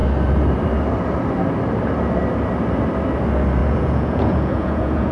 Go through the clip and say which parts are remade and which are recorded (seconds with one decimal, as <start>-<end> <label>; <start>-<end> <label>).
0.0-3.6 recorded; 3.6-5.1 remade